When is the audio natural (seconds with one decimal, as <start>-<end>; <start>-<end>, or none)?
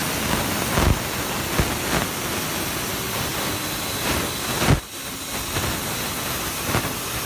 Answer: 0.0-7.3